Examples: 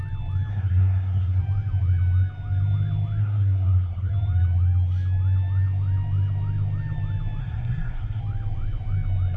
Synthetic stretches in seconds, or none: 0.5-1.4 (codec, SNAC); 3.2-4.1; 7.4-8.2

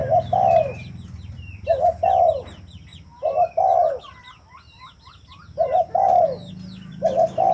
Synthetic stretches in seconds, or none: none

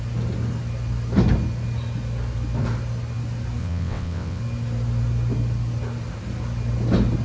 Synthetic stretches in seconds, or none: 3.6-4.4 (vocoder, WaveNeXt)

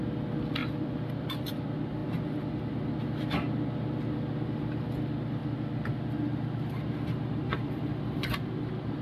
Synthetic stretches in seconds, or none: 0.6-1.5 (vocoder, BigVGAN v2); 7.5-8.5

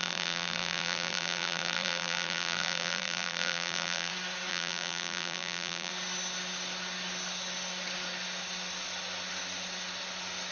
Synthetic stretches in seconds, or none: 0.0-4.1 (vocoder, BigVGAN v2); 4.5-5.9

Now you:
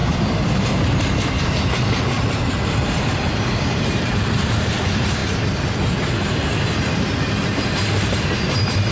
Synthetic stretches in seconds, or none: 0.0-5.2 (vocoder, BigVGAN v2); 7.2-8.9

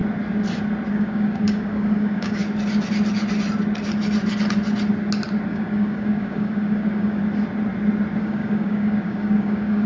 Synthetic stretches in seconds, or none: 0.9-2.4 (codec, DAC); 5.5-7.2; 8.2-9.9

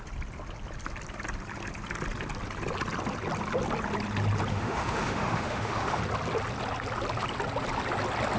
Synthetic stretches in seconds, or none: 4.5-6.0 (autoencoder, DAC-VAE)